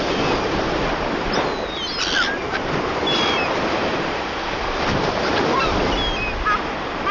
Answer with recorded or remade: recorded